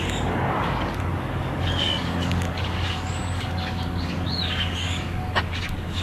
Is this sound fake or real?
fake